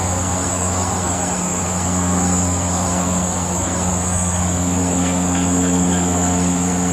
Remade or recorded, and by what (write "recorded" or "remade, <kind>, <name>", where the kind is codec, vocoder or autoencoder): remade, codec, SNAC